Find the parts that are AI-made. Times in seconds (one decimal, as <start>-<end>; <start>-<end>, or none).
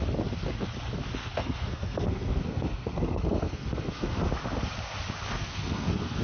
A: 1.2-4.2; 5.3-6.2